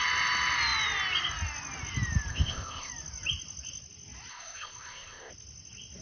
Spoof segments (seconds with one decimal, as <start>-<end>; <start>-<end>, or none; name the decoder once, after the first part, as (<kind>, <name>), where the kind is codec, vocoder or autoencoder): 2.3-2.9 (codec, ZipCodec); 4.3-5.3